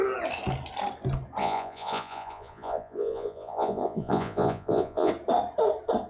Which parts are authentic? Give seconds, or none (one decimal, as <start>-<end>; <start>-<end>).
0.0-1.4; 5.1-6.1